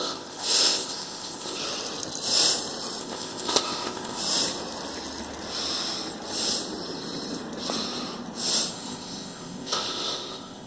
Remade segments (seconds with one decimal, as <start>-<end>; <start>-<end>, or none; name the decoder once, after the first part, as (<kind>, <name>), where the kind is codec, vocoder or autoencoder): 0.0-1.6 (codec, ZipCodec); 3.0-4.2; 8.7-10.7